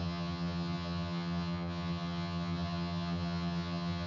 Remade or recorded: remade